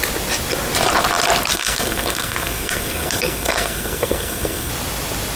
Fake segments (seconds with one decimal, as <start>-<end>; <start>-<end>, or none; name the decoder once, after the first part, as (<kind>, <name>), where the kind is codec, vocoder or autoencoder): 1.5-4.7 (codec, SNAC)